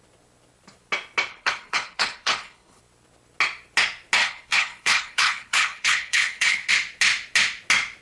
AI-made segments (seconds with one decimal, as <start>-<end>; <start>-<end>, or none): 1.3-2.8; 4.2-6.7